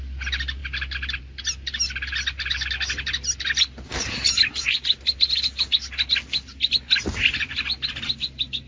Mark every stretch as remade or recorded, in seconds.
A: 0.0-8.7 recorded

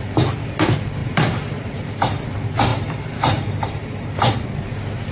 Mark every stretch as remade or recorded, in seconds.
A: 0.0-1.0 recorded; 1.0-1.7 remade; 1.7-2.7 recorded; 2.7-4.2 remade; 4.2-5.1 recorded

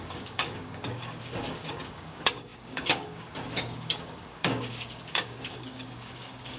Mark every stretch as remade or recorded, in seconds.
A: 0.0-6.6 remade

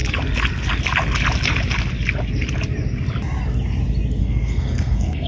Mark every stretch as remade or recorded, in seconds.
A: 0.0-4.2 recorded; 4.2-5.3 remade